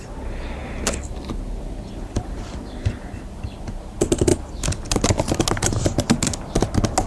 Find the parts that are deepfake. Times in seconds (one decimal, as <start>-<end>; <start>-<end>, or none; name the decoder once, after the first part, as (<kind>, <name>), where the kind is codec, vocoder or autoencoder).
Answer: none